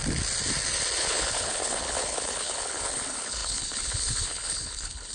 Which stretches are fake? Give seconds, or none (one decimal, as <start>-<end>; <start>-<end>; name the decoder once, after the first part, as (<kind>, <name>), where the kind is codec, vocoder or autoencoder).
1.0-5.1 (codec, HILCodec)